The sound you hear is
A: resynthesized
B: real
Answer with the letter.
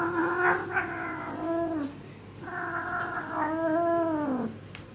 B